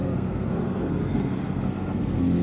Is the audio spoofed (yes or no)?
yes